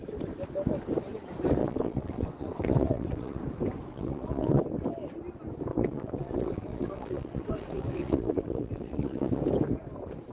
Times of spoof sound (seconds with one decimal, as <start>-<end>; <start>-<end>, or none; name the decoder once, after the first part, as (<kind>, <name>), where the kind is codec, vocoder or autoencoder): 1.6-3.4 (vocoder, WaveNeXt); 3.9-4.6; 5.7-9.4